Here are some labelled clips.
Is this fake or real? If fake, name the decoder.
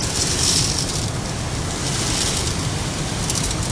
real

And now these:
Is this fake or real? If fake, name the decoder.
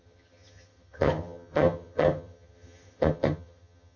fake, vocoder, HiFi-GAN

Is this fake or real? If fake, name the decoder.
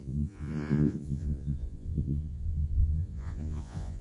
fake, vocoder, Vocos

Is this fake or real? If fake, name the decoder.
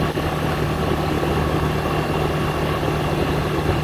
real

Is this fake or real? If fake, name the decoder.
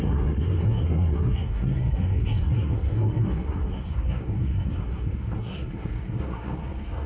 fake, codec, SNAC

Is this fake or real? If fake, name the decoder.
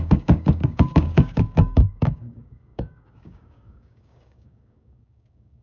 fake, codec, DAC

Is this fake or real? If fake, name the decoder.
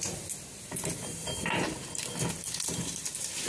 real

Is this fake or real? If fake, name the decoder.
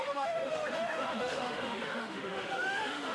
fake, autoencoder, DAC-VAE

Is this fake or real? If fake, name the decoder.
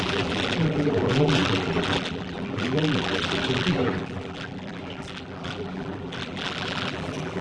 fake, vocoder, BigVGAN v2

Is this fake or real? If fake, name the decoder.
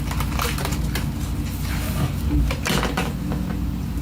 real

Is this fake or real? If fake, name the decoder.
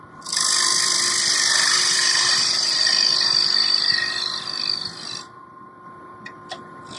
fake, vocoder, BigVGAN v2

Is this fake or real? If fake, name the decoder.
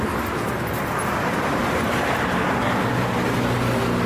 real